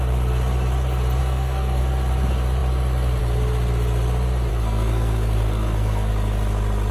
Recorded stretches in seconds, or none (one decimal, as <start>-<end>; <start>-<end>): 0.0-1.2; 1.8-4.5; 6.1-6.9